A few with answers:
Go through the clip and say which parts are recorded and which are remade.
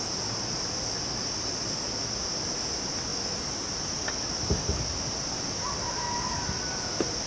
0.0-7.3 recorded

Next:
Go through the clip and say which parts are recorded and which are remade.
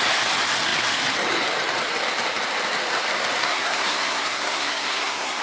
0.0-3.4 recorded; 3.4-5.4 remade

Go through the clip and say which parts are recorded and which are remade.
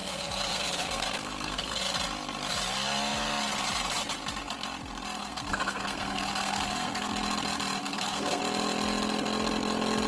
0.0-1.8 remade; 1.8-5.2 recorded; 5.2-7.1 remade; 7.1-7.8 recorded; 7.8-8.4 remade; 8.4-10.1 recorded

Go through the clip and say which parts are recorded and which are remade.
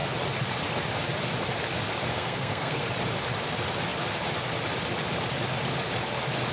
0.0-2.1 recorded; 2.1-2.8 remade; 2.8-6.5 recorded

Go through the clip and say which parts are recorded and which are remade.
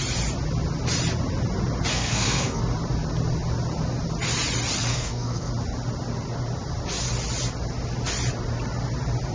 0.0-1.9 recorded; 1.9-2.6 remade; 2.6-4.9 recorded; 4.9-5.5 remade; 5.5-9.3 recorded